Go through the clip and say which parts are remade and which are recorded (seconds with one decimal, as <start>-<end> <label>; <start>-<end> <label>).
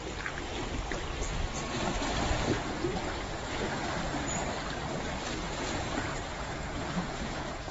0.0-3.0 recorded; 3.0-3.8 remade; 3.8-5.4 recorded; 5.4-7.7 remade